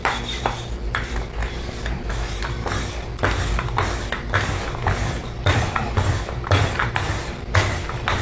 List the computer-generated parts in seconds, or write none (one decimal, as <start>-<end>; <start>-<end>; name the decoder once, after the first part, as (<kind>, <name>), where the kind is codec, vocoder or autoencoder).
1.4-2.1 (vocoder, BigVGAN v2); 5.2-6.3